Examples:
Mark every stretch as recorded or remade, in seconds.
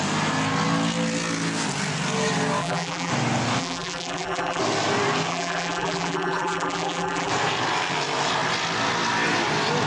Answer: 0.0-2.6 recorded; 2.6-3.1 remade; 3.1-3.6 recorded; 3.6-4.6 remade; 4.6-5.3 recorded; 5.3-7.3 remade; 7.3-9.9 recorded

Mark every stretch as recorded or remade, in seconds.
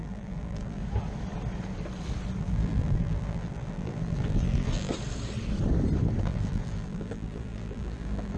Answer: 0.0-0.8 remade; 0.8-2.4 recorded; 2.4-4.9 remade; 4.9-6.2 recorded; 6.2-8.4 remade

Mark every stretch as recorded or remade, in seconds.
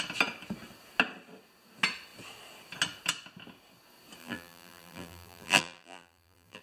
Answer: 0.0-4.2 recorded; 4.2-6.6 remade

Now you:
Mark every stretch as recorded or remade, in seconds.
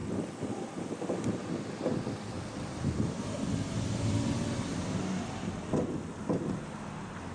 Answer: 0.0-3.2 remade; 3.2-7.3 recorded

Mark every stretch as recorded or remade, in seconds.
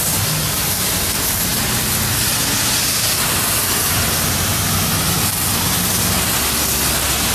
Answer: 0.0-7.3 recorded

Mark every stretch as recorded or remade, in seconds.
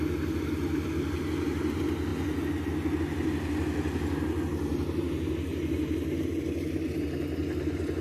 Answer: 0.0-4.7 recorded; 4.7-8.0 remade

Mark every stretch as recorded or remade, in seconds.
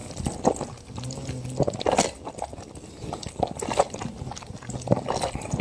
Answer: 0.0-5.6 recorded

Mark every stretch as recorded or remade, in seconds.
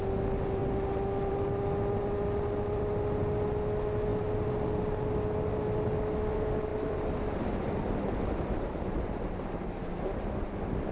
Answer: 0.0-6.7 recorded; 6.7-8.0 remade; 8.0-10.9 recorded